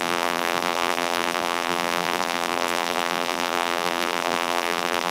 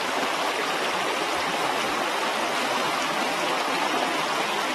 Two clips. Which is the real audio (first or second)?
second